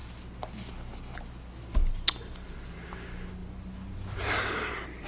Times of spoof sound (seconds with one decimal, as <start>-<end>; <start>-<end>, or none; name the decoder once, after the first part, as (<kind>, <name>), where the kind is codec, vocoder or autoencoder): none